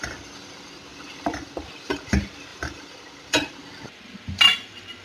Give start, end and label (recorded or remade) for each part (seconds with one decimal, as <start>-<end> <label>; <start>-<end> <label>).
0.0-0.9 recorded; 0.9-2.1 remade; 2.1-2.5 recorded; 2.5-3.5 remade; 3.5-5.0 recorded